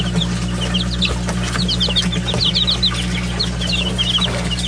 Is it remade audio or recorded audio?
recorded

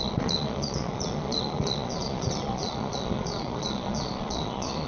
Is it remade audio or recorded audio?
remade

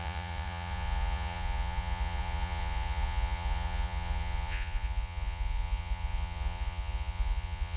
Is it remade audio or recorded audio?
remade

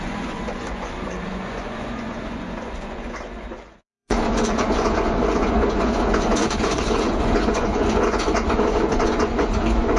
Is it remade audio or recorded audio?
remade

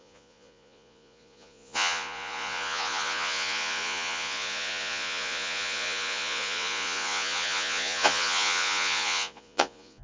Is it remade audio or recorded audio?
remade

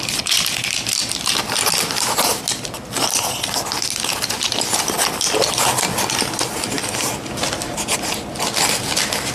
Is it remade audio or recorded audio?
recorded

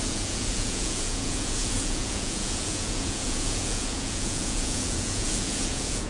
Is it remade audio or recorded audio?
remade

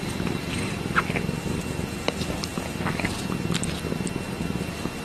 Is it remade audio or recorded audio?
recorded